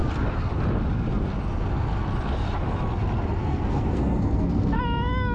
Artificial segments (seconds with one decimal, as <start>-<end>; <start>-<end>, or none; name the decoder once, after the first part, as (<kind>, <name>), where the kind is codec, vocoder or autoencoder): 3.4-4.8 (codec, SNAC)